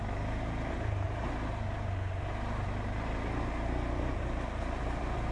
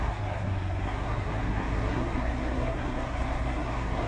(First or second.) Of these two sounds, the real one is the first